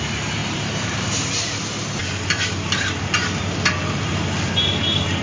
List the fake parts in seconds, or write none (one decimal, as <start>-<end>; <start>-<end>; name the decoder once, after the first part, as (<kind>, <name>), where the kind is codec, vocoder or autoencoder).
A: 0.4-1.3 (vocoder, BigVGAN v2)